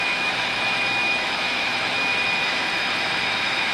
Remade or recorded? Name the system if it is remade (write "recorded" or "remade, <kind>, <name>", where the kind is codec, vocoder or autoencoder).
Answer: remade, autoencoder, DAC-VAE